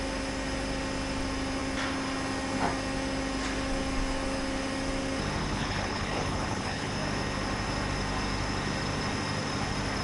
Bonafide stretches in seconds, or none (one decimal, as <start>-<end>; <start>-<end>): 0.0-5.4; 6.9-10.0